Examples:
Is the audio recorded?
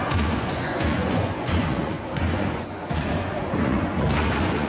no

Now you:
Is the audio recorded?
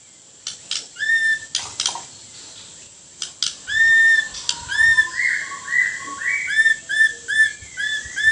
yes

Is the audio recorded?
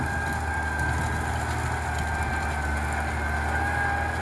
yes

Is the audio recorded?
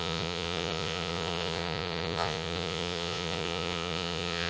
no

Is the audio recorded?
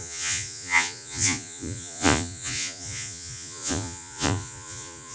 no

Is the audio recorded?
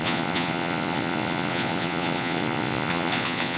no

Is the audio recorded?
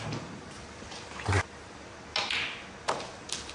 yes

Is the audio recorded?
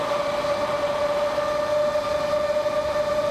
yes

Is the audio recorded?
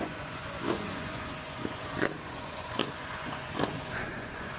no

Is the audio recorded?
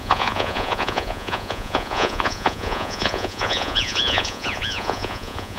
no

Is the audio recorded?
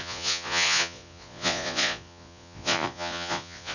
no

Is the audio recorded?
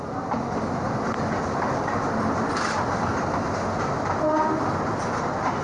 yes